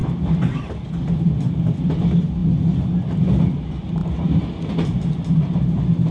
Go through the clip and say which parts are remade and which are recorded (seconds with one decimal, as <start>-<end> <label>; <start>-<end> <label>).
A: 0.0-2.4 remade; 2.4-3.2 recorded; 3.2-4.0 remade; 4.0-4.7 recorded; 4.7-6.1 remade